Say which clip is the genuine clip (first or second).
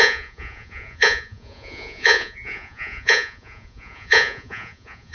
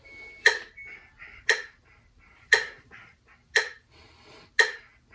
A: second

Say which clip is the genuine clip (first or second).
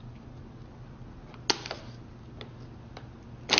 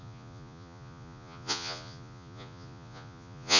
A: first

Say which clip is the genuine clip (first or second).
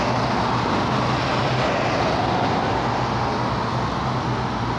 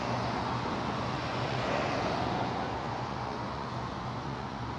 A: first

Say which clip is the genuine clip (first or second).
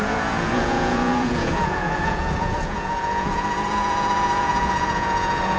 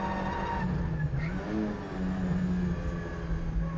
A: second